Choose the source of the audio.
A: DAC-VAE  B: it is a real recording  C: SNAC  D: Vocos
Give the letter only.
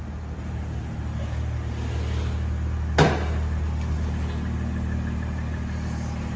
B